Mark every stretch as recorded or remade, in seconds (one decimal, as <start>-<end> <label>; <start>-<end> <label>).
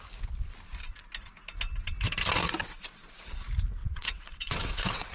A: 0.0-2.6 recorded; 2.6-3.2 remade; 3.2-3.8 recorded; 3.8-5.1 remade